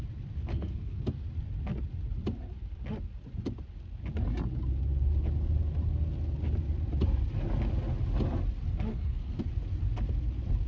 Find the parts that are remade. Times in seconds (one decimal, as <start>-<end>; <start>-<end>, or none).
0.5-1.0; 8.9-9.4